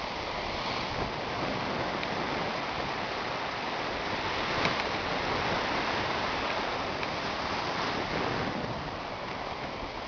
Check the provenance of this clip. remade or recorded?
recorded